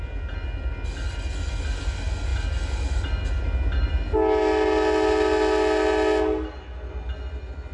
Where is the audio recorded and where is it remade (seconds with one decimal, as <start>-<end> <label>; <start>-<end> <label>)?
0.0-7.7 recorded